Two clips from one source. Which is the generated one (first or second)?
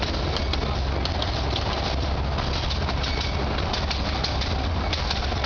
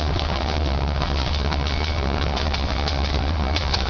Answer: second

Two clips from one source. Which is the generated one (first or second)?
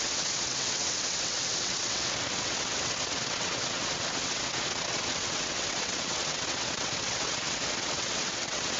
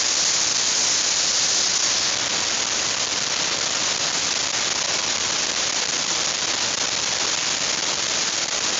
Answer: first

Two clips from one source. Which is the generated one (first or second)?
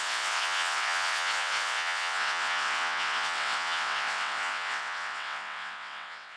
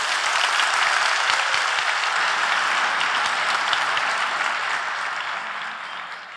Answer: first